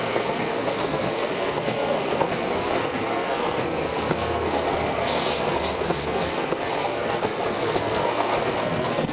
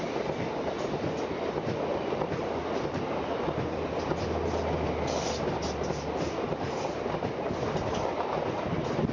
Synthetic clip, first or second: first